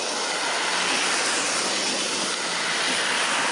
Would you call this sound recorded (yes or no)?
yes